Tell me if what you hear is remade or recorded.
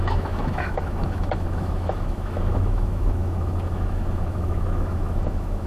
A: remade